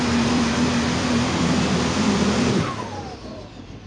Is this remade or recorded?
remade